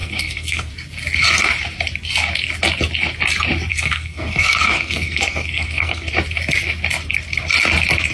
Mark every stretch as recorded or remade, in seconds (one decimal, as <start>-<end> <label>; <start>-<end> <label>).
0.0-0.7 remade; 0.7-3.7 recorded; 3.7-6.1 remade; 6.1-8.1 recorded